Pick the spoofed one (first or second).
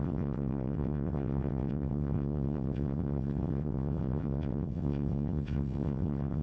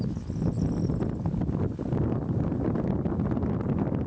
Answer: first